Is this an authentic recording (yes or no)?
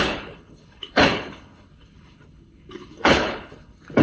no